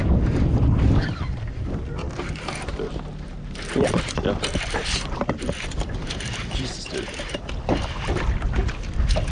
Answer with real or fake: real